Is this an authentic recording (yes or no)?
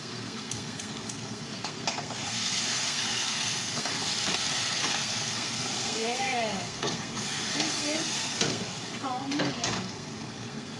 no